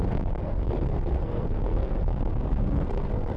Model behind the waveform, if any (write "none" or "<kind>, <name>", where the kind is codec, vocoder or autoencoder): codec, SNAC